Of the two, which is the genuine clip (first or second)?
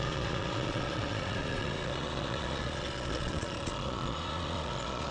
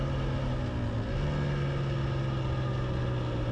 second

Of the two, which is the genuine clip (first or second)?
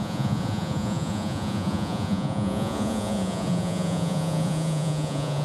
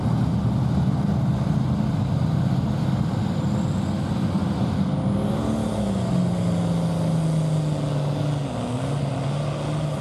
second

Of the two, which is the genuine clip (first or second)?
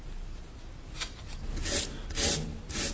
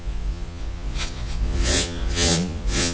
first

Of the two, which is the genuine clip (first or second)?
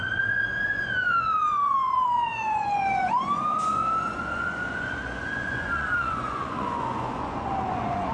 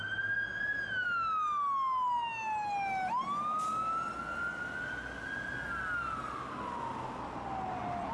second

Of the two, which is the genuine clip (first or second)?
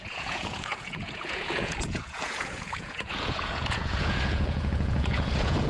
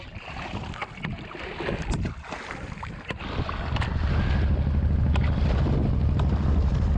second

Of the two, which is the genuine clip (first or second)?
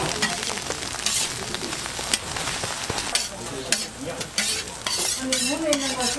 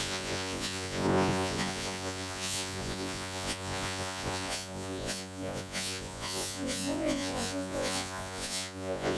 first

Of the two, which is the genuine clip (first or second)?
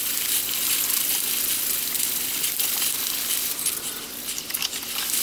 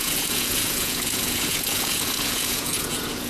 first